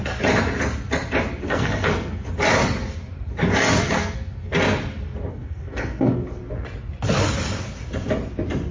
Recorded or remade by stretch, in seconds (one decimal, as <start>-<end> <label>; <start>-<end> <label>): 0.0-1.4 recorded; 1.4-2.3 remade; 2.3-3.8 recorded; 3.8-4.5 remade; 4.5-5.3 recorded; 5.3-6.4 remade; 6.4-8.7 recorded